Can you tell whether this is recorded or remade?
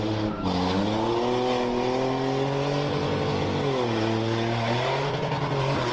recorded